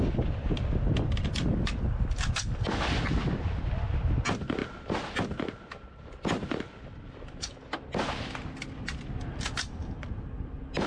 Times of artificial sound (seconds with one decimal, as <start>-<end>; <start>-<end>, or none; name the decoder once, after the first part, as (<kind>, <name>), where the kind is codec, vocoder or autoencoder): none